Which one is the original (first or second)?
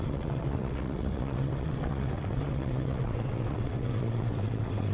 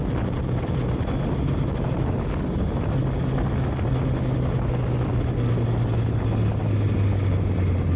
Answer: second